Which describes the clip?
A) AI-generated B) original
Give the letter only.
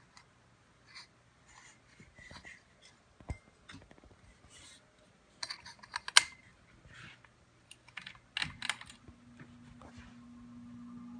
B